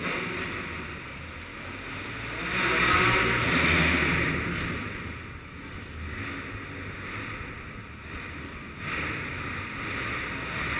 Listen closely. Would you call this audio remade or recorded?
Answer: recorded